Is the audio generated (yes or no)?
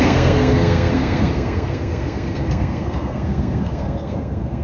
yes